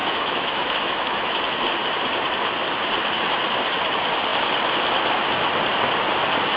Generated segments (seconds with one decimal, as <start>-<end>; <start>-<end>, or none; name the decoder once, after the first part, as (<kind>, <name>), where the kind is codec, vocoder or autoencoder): 0.0-1.4 (autoencoder, DAC-VAE)